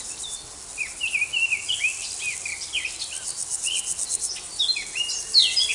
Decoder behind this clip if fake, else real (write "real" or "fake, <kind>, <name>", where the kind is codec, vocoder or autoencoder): real